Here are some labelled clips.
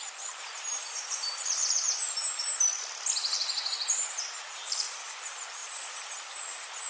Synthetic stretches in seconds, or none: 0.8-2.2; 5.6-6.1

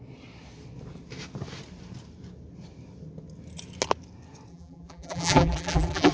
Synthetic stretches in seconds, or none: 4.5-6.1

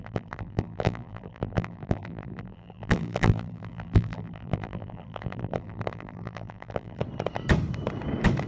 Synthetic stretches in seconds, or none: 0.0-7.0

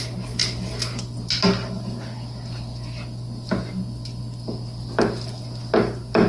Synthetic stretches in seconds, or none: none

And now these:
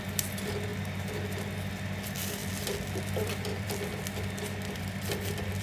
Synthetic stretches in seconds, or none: 3.5-4.0

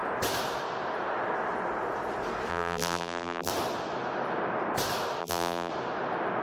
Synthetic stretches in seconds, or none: 2.5-3.5; 5.2-5.7